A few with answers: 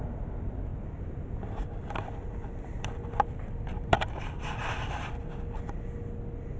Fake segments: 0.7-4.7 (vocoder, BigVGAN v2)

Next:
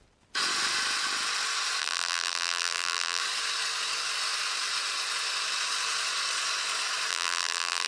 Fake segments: 1.8-3.2 (vocoder, BigVGAN v2); 7.1-7.9